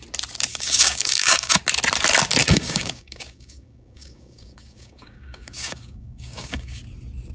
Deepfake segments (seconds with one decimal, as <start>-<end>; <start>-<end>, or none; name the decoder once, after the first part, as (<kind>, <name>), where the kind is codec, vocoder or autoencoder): 0.5-1.6 (codec, DAC); 2.4-6.8